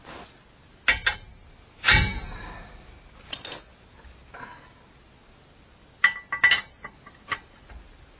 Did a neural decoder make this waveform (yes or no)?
no